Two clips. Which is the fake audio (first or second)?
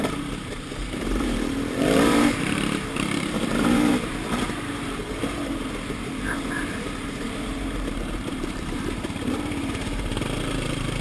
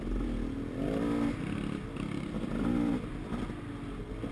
first